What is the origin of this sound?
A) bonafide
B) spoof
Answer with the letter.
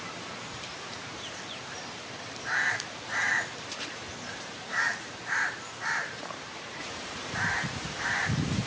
B